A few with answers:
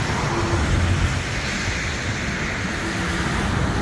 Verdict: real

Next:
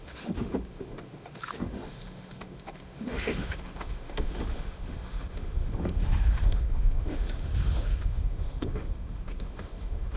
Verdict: fake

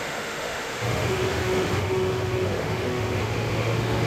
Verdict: fake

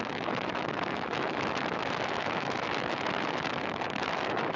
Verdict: fake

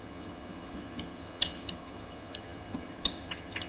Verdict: fake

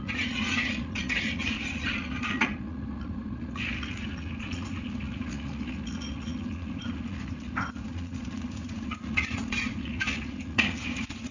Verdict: fake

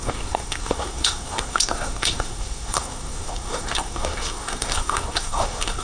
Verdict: fake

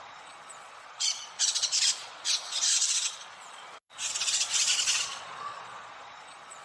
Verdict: fake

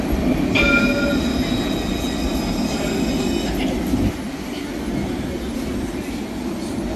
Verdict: real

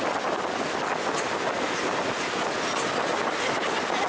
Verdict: real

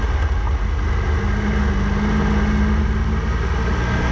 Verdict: real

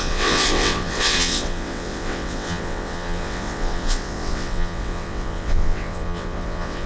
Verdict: fake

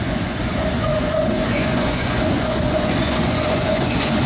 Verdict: fake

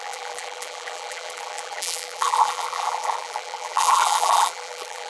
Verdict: fake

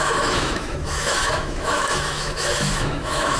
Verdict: fake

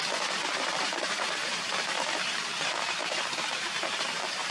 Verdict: fake